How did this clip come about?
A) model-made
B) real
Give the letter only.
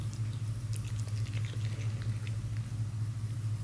B